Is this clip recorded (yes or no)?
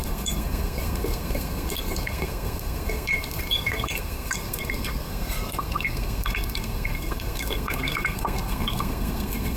no